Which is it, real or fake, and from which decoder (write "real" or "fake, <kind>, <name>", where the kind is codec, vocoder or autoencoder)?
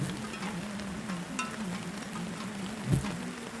real